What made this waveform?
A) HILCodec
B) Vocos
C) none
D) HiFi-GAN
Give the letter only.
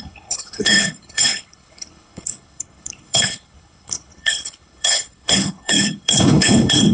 A